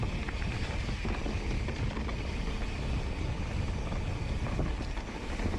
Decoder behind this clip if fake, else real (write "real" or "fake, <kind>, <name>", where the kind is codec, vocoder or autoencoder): real